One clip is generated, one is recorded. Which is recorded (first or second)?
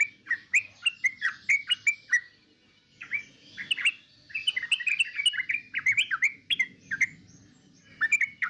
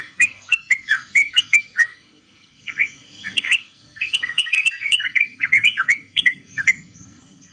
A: first